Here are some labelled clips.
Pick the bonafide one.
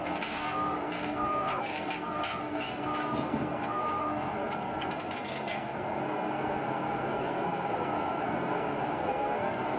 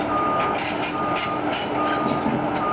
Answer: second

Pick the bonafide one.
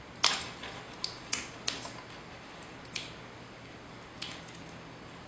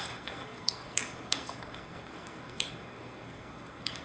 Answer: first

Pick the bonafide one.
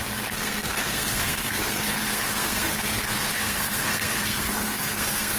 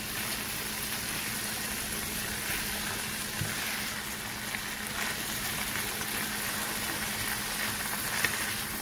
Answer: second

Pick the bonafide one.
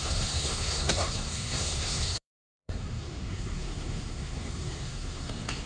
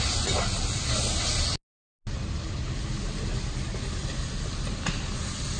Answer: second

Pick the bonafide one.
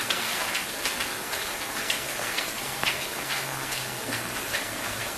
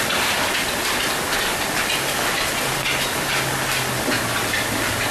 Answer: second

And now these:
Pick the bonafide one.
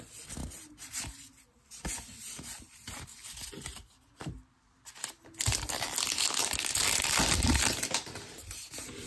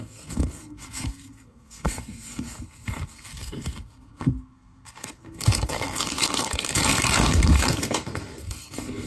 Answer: first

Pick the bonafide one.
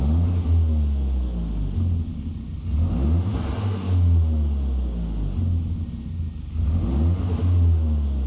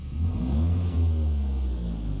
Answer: first